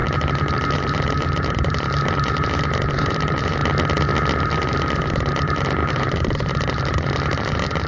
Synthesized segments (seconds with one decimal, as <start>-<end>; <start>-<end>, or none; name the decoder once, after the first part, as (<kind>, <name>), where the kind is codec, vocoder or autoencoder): 0.0-3.6 (vocoder, BigVGAN v2); 4.4-7.9